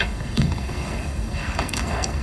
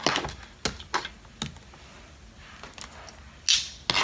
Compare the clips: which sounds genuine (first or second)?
second